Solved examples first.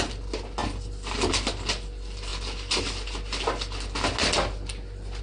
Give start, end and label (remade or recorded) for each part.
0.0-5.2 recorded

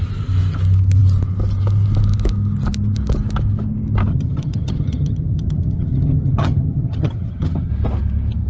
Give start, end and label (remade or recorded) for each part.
0.0-4.1 recorded; 4.1-7.7 remade; 7.7-8.5 recorded

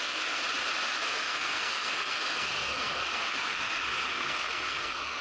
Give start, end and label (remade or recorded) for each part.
0.0-0.4 remade; 0.4-1.0 recorded; 1.0-5.2 remade

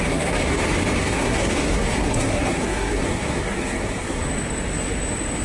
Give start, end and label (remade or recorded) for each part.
0.0-0.6 remade; 0.6-1.0 recorded; 1.0-4.2 remade; 4.2-5.4 recorded

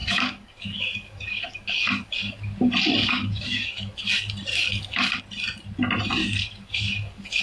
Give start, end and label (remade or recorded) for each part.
0.0-2.4 remade; 2.4-3.0 recorded; 3.0-4.1 remade; 4.1-4.5 recorded; 4.5-5.2 remade; 5.2-6.2 recorded; 6.2-7.4 remade